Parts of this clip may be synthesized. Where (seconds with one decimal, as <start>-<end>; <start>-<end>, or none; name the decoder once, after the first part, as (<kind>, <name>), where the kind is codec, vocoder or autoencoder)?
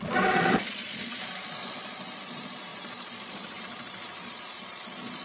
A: 0.0-5.2 (vocoder, Vocos)